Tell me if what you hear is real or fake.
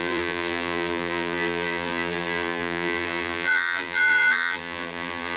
fake